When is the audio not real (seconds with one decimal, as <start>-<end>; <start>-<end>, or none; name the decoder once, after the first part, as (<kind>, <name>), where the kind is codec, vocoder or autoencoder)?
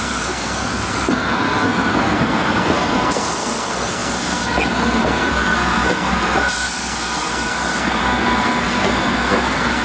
0.0-9.8 (codec, SNAC)